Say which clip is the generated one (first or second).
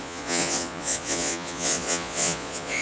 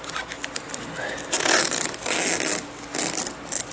first